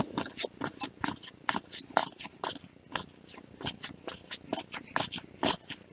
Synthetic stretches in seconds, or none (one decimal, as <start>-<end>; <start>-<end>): none